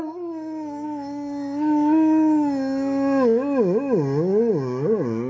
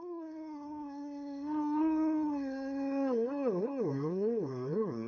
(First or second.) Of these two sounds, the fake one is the second